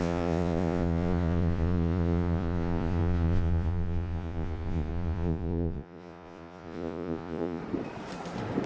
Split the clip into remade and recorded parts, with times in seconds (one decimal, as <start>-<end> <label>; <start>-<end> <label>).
0.0-7.6 remade; 7.6-8.7 recorded